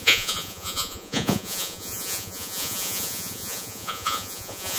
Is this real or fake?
fake